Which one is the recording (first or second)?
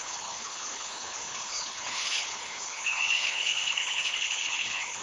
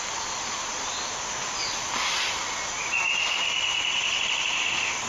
second